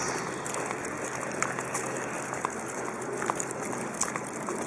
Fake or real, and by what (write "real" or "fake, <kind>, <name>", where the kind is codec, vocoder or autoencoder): real